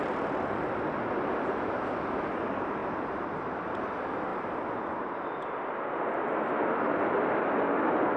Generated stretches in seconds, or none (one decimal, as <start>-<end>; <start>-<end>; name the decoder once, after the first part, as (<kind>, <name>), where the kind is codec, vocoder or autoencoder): none